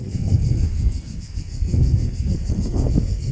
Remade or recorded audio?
remade